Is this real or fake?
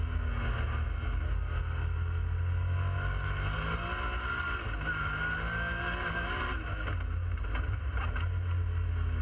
real